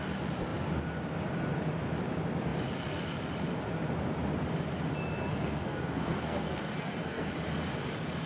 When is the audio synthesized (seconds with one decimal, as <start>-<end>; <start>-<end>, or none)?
5.3-7.3